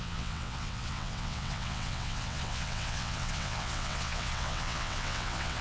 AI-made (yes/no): yes